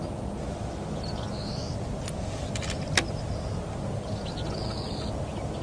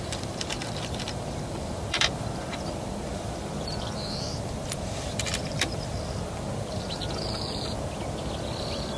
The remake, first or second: second